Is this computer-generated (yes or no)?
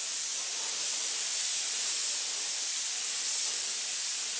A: no